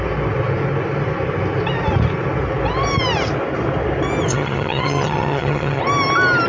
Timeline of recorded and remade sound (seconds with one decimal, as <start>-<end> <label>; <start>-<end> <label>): 0.0-4.3 recorded; 4.3-5.8 remade; 5.8-6.5 recorded